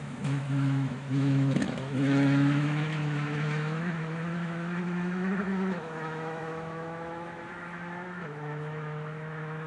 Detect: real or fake fake